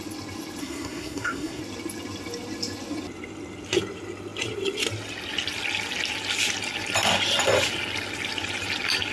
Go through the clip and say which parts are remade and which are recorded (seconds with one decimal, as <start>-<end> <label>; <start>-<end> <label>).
0.0-0.6 recorded; 0.6-1.6 remade; 1.6-9.1 recorded